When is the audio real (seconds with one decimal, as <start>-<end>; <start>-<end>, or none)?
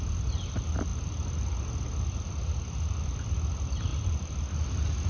0.0-5.1